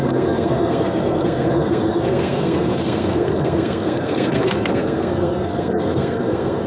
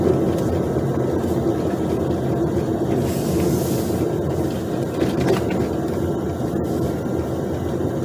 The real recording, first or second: second